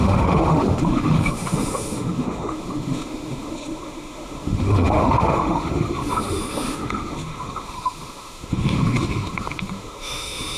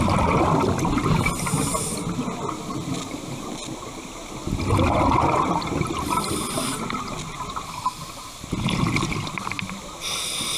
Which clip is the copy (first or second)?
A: first